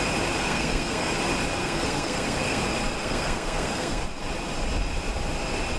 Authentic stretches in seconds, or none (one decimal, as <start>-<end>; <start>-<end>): 0.0-0.4; 1.1-1.6; 2.6-3.0; 4.0-5.8